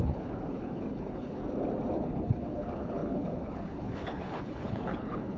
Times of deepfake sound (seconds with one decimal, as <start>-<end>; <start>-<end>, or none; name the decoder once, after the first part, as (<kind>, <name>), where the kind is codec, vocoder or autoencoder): 0.0-1.4 (codec, HILCodec); 1.9-5.4